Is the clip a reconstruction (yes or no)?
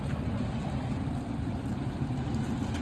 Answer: no